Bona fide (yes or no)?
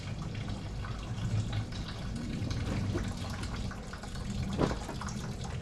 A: yes